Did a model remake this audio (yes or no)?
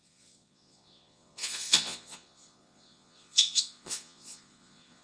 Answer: yes